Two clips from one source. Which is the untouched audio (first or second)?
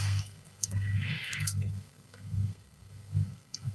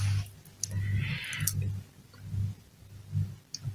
second